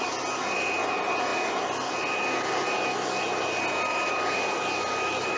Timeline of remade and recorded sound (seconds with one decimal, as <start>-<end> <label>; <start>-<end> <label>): 0.0-5.4 recorded